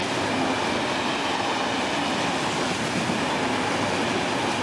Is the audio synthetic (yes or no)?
no